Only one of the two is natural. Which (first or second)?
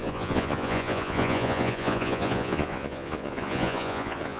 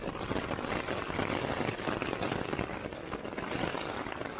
second